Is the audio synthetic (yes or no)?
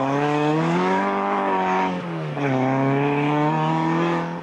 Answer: yes